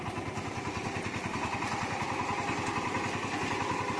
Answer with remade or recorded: recorded